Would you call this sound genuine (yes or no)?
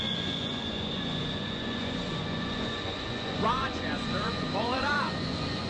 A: no